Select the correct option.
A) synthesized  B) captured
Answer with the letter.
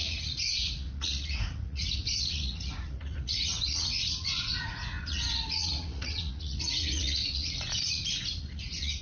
A